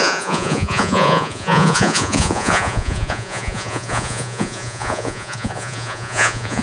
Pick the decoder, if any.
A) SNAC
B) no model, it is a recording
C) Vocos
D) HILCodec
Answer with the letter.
C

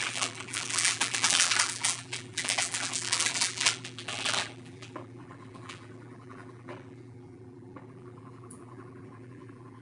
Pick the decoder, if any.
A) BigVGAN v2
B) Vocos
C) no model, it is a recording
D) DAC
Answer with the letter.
A